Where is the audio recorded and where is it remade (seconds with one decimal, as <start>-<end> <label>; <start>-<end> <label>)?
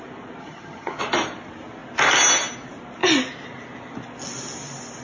0.0-0.4 recorded; 0.4-1.0 remade; 1.0-5.0 recorded